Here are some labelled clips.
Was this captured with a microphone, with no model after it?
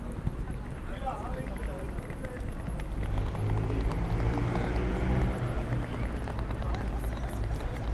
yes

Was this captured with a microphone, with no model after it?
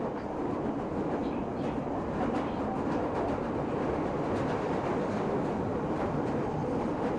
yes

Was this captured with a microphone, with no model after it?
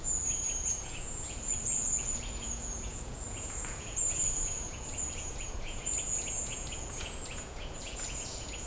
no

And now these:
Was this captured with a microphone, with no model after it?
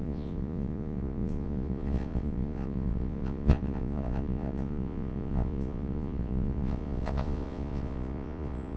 no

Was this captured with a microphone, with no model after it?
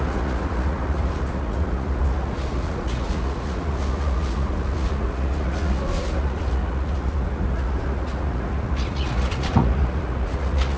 no